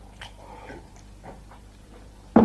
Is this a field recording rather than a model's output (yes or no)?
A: no